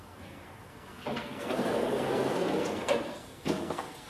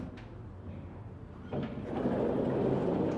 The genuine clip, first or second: second